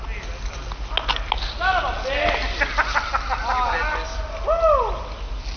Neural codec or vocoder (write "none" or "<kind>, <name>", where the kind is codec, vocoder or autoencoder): none